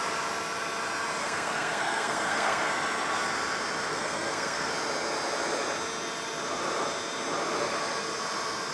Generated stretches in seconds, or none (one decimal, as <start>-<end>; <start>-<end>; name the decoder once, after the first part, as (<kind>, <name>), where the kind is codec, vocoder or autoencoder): 1.2-2.7 (codec, SNAC); 3.9-4.7